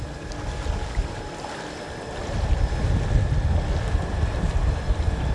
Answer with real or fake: real